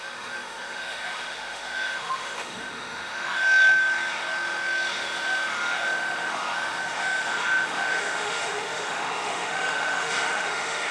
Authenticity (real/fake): fake